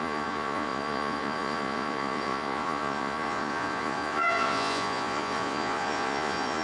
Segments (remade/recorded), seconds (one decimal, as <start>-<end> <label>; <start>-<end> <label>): 0.0-6.6 remade